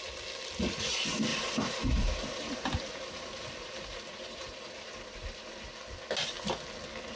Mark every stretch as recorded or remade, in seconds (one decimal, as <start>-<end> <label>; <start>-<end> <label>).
0.0-1.3 recorded; 1.3-5.6 remade; 5.6-7.2 recorded